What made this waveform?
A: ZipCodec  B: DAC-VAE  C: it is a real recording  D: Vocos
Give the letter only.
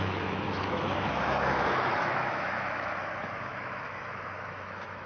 B